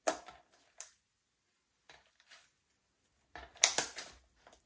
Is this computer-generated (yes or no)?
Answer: no